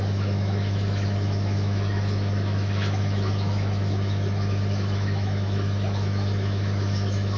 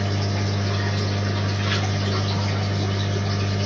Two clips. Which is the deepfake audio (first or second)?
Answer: first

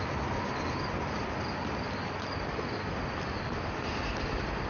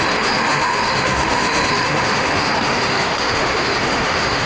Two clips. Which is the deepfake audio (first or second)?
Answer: second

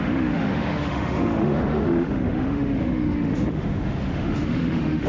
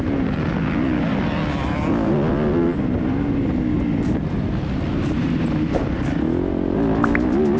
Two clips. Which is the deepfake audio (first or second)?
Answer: first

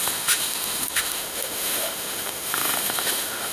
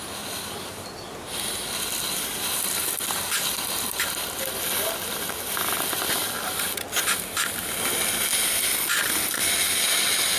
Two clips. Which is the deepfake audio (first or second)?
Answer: first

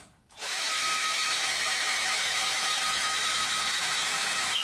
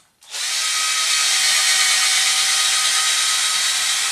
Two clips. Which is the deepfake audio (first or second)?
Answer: first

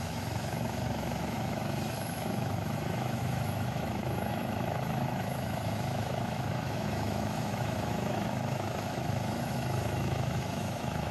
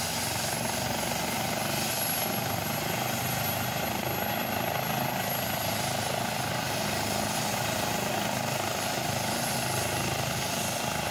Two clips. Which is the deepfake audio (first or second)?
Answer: first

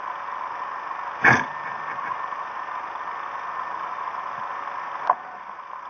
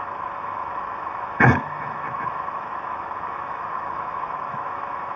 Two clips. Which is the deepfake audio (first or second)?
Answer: second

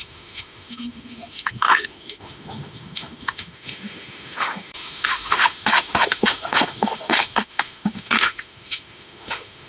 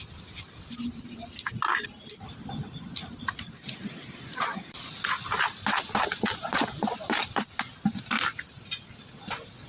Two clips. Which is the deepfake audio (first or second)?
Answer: first